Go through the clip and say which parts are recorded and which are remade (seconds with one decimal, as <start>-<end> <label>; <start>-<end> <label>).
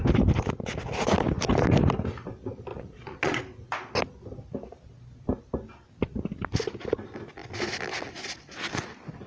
0.0-2.7 recorded; 2.7-3.4 remade; 3.4-9.3 recorded